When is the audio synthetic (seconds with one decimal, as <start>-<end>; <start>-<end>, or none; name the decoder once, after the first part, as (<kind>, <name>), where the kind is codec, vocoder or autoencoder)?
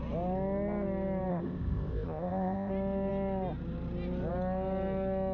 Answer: 1.3-2.7 (codec, ZipCodec)